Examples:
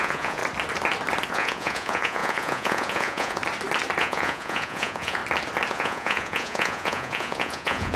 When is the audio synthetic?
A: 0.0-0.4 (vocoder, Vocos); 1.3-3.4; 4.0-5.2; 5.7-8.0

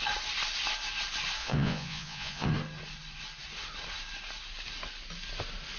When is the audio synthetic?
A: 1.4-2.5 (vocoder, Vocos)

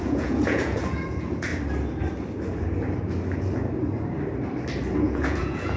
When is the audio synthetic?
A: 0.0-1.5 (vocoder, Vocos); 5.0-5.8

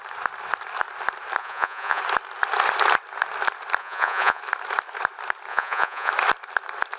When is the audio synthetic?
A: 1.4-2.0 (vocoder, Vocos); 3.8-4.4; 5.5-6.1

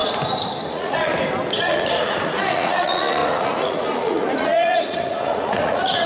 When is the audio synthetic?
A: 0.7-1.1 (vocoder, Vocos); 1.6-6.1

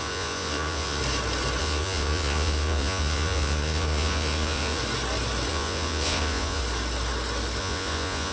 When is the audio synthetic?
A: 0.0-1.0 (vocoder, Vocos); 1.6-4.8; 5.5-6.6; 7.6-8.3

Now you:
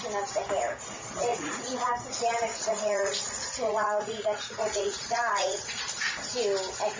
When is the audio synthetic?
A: 1.3-1.9 (vocoder, Vocos); 2.5-5.8